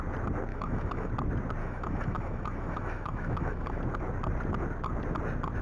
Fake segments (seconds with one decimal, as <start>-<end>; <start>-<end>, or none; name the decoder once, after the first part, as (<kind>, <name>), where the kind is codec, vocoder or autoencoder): 0.5-1.1 (autoencoder, DAC-VAE); 1.6-3.8